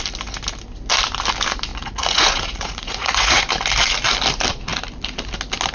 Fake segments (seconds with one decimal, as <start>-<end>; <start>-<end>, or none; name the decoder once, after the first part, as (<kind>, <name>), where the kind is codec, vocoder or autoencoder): 1.7-3.5 (vocoder, Vocos)